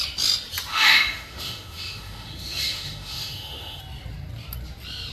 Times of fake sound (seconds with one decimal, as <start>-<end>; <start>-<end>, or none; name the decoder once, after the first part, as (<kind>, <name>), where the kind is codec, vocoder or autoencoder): 0.7-3.8 (autoencoder, DAC-VAE)